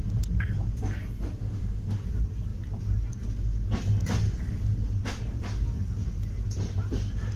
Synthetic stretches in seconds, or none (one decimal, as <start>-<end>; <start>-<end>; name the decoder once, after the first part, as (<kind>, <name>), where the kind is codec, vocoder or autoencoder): 1.4-2.0 (autoencoder, DAC-VAE)